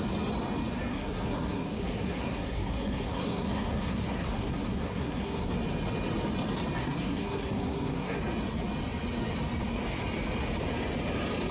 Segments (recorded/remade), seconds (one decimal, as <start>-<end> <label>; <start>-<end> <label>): 0.0-0.9 recorded; 0.9-5.5 remade; 5.5-6.8 recorded; 6.8-8.2 remade; 8.2-11.5 recorded